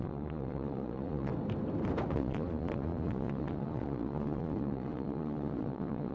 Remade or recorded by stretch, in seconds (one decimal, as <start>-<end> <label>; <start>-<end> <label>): 0.0-1.3 remade; 1.3-2.1 recorded; 2.1-6.1 remade

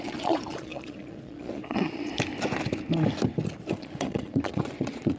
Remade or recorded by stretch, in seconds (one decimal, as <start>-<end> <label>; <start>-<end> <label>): 0.0-2.1 remade; 2.1-3.7 recorded; 3.7-5.2 remade

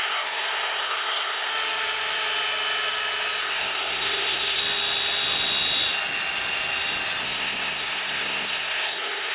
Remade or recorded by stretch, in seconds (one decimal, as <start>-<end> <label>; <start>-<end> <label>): 0.0-1.5 remade; 1.5-3.4 recorded; 3.4-4.6 remade; 4.6-7.2 recorded; 7.2-9.3 remade